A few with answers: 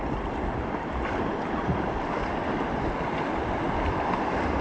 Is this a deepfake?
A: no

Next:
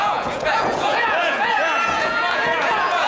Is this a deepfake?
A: yes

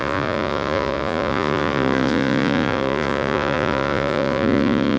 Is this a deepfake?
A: yes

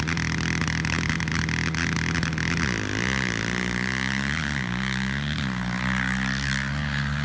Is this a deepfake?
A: no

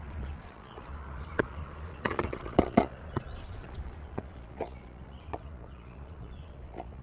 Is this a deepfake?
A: yes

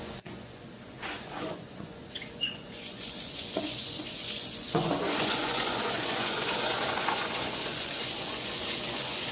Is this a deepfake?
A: yes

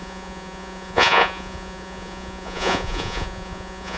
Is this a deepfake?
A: yes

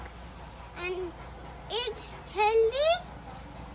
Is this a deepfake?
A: no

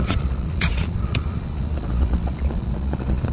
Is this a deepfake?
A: yes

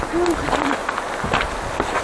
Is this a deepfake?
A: no